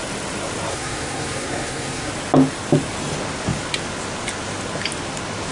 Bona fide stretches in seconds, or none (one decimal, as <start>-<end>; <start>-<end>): 0.0-0.7; 2.1-5.5